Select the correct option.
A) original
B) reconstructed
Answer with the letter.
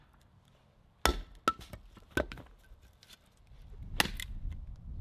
A